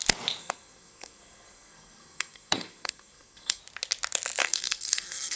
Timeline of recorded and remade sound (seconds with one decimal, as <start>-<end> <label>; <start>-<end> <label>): 0.0-0.4 recorded; 0.4-3.6 remade; 3.6-4.4 recorded; 4.4-5.4 remade